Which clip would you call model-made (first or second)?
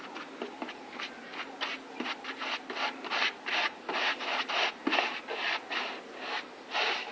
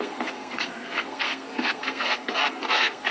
second